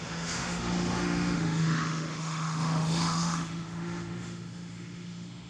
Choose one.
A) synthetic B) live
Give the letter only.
A